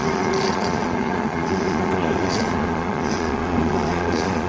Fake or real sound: fake